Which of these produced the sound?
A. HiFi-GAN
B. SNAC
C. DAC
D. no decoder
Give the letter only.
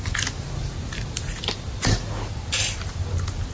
D